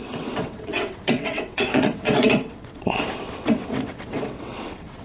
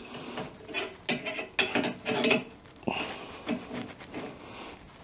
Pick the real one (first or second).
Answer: second